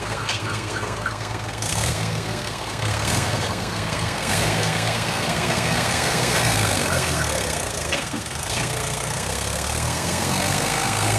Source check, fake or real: fake